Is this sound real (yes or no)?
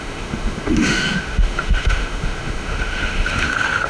no